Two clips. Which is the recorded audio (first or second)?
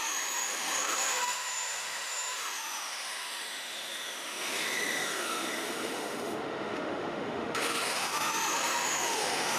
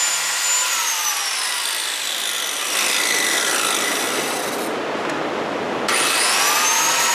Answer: second